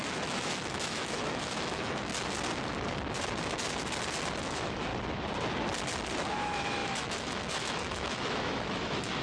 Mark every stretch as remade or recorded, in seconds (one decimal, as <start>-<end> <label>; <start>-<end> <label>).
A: 0.0-2.1 remade; 2.1-4.4 recorded; 4.4-4.9 remade; 4.9-6.3 recorded; 6.3-9.2 remade